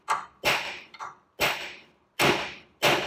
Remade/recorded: recorded